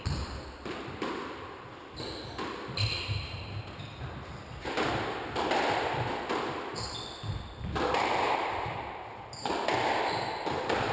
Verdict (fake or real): real